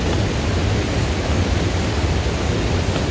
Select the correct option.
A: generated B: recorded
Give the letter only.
B